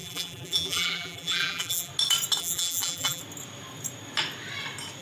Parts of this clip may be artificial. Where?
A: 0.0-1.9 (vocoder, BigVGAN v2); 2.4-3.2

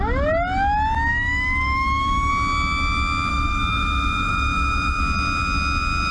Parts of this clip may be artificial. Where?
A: 1.1-2.3 (autoencoder, DAC-VAE); 3.3-5.0

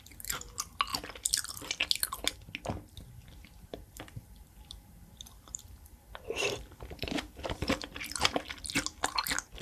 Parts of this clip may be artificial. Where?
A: 0.9-1.7 (vocoder, BigVGAN v2); 3.7-8.6

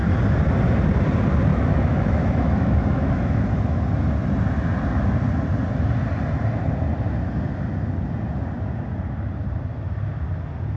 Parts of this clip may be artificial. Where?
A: 1.5-3.8 (autoencoder, DAC-VAE)

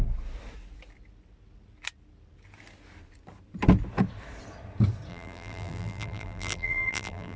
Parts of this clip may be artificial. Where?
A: 5.1-7.4 (vocoder, BigVGAN v2)

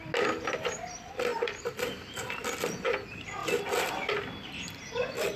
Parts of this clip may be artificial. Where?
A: 1.3-2.4 (vocoder, BigVGAN v2)

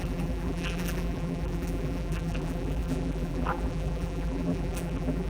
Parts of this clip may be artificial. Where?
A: 0.0-5.3 (vocoder, BigVGAN v2)

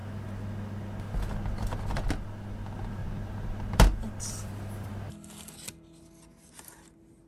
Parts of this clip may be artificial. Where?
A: 3.0-4.9 (vocoder, BigVGAN v2)